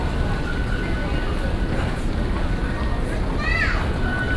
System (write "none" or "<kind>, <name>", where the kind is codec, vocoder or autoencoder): none